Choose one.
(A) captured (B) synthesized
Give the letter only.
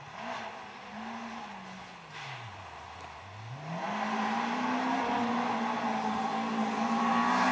A